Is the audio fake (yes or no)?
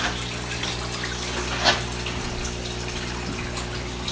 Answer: no